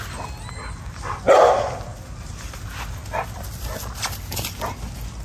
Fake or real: real